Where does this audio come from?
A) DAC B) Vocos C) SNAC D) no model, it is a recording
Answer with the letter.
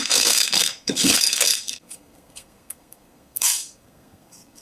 C